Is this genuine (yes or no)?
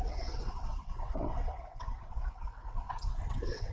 no